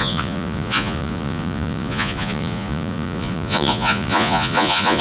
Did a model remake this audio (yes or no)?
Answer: yes